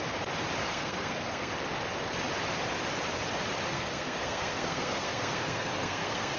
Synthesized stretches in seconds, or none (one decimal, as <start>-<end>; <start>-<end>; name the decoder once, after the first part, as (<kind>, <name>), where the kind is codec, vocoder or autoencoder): 0.6-1.5 (codec, SNAC); 3.7-6.4